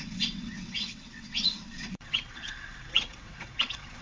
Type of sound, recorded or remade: remade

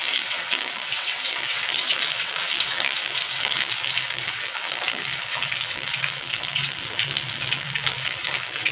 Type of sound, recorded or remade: remade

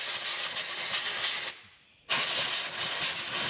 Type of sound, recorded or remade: recorded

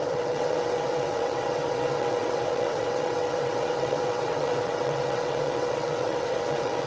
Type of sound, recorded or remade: remade